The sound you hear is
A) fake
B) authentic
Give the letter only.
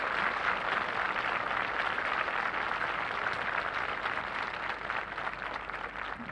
B